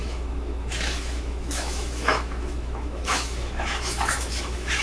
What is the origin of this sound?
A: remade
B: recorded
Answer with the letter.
A